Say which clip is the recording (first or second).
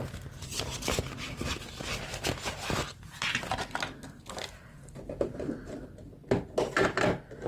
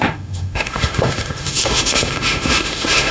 first